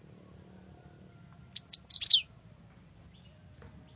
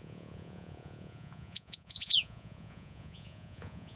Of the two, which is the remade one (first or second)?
second